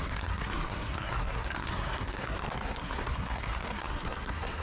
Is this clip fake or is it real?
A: fake